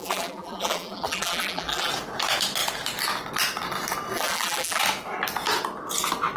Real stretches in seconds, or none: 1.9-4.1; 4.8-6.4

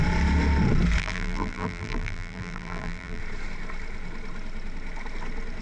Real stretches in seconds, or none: 0.0-1.0; 3.2-5.6

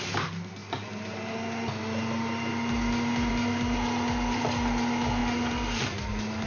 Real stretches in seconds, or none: 0.0-6.5